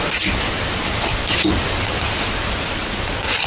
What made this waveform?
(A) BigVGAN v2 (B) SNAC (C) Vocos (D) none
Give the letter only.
D